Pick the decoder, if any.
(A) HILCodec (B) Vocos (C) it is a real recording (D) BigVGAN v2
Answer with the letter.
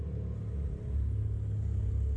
C